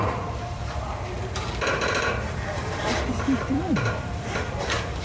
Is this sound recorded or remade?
remade